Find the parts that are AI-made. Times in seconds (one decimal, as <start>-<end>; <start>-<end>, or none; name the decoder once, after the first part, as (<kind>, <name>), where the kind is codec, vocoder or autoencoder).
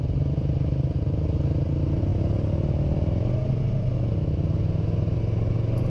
none